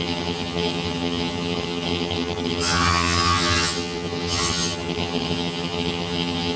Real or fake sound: fake